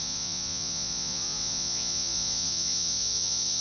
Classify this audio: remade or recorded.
remade